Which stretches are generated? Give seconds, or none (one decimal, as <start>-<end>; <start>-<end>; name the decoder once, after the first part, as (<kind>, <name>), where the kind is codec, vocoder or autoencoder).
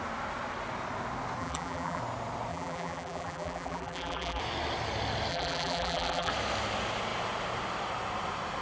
1.4-2.0 (vocoder, BigVGAN v2); 2.5-4.4; 5.3-6.3